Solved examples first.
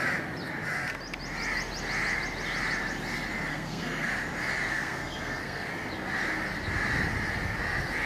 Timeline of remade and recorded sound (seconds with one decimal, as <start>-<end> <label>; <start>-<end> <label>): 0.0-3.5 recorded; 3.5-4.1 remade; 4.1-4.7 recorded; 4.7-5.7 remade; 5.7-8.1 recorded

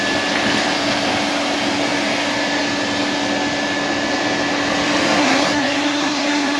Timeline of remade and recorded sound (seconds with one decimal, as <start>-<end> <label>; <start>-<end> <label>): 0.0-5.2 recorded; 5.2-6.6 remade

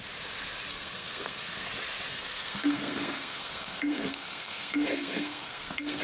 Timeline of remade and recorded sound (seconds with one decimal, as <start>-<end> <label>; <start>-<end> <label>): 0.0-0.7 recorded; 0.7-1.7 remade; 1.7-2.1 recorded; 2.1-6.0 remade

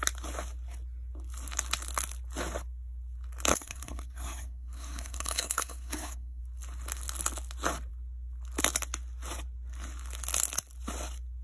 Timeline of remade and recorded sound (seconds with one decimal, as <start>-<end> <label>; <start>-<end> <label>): 0.0-3.5 recorded; 3.5-6.4 remade; 6.4-11.4 recorded

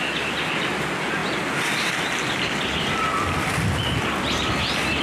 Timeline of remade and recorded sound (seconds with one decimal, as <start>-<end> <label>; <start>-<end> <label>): 0.0-5.0 recorded

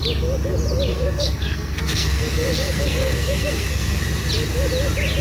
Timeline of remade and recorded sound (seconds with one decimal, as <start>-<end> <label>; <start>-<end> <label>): 0.0-0.9 recorded; 0.9-4.0 remade; 4.0-5.2 recorded